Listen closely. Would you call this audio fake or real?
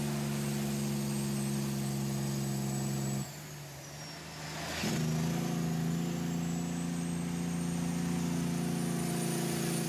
real